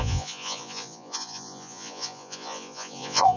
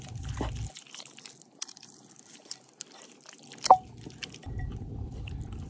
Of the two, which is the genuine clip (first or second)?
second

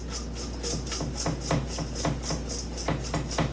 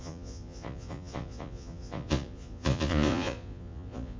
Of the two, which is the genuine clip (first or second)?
first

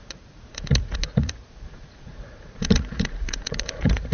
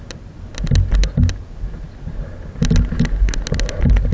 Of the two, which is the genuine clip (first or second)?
second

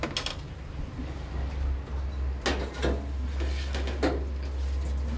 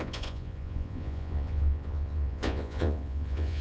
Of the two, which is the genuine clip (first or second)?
first